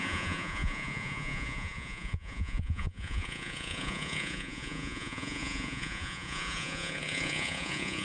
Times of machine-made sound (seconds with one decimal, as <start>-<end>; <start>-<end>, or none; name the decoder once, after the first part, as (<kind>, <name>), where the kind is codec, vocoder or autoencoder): 0.0-8.0 (vocoder, Vocos)